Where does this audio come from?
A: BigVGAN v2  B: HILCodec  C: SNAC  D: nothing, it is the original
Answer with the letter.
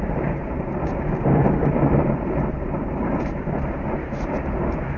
A